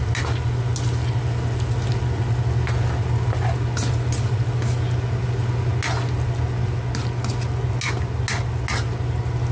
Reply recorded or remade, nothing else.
recorded